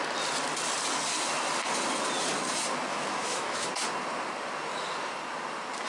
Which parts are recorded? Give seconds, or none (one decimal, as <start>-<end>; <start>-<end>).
0.0-2.9; 3.7-5.9